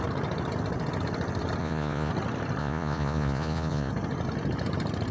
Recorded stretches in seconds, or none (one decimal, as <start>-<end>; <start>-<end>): 0.0-1.6; 2.1-2.6; 3.9-5.1